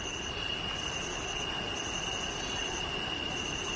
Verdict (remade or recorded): recorded